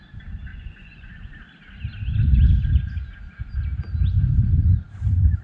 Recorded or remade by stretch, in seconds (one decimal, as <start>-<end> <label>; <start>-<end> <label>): 0.0-0.5 recorded; 0.5-1.3 remade; 1.3-5.4 recorded